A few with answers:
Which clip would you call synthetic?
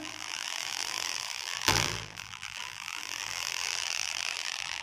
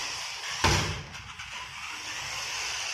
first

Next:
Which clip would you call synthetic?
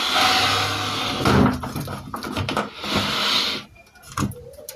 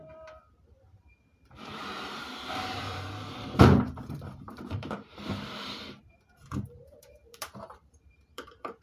second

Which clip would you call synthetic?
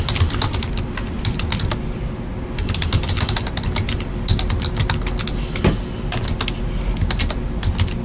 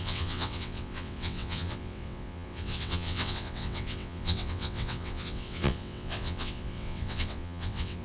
second